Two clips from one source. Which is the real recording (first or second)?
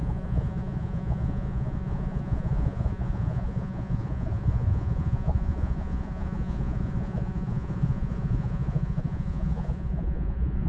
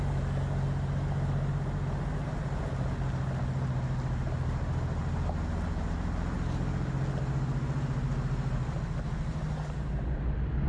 second